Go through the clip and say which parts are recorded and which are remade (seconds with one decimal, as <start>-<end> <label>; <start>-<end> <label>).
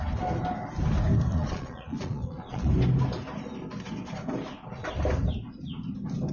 0.0-1.3 recorded; 1.3-2.7 remade; 2.7-6.3 recorded